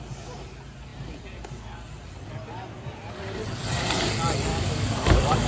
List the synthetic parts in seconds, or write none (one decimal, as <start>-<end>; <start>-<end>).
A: 4.5-5.5

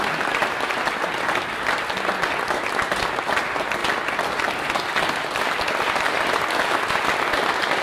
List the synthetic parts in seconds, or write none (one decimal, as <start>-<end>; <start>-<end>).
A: none

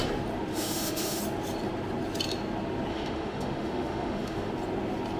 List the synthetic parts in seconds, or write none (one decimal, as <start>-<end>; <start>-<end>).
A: 0.5-1.2; 2.9-4.5